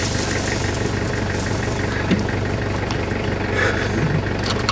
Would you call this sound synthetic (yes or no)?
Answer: no